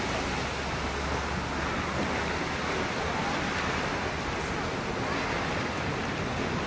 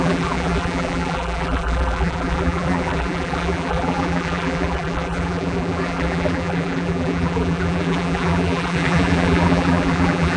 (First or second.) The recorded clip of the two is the first